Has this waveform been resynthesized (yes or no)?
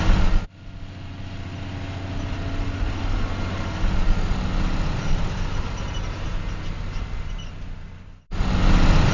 no